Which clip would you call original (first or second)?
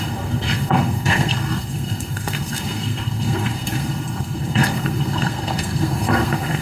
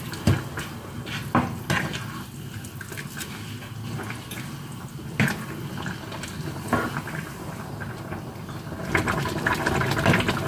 second